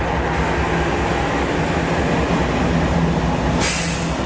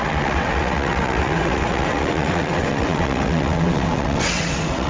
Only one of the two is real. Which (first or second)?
first